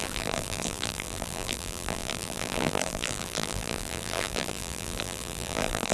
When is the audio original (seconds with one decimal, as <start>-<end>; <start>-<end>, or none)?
none

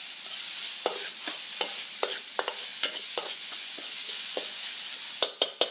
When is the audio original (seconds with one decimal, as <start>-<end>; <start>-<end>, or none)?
0.0-2.7; 4.6-5.7